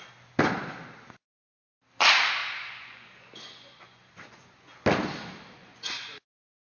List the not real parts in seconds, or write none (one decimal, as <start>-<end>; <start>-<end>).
2.4-4.7; 5.6-6.2